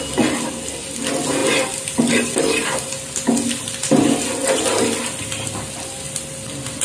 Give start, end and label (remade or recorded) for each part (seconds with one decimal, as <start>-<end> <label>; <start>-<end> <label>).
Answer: 0.0-6.8 recorded